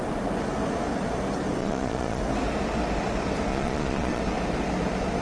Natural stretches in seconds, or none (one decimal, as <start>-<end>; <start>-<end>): 0.0-1.6; 2.2-3.5; 4.2-5.2